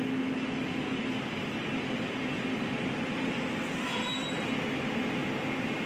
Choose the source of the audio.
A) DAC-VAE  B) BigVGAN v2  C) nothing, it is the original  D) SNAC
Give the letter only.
C